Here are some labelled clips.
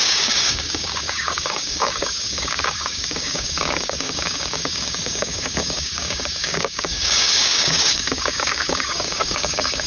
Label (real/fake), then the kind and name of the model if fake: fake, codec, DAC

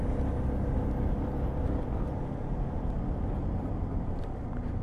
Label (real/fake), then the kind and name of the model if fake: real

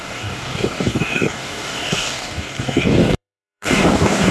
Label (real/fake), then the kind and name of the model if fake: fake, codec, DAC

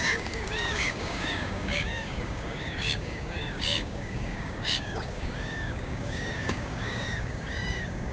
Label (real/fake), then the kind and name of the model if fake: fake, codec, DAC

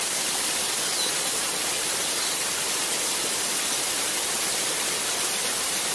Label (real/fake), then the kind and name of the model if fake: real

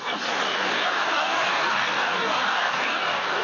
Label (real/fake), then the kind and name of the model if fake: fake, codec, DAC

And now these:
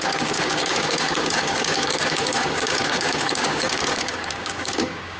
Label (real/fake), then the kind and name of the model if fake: fake, codec, DAC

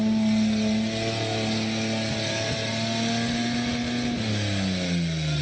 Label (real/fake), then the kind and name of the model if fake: real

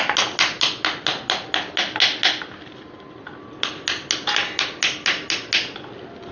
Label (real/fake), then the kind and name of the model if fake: real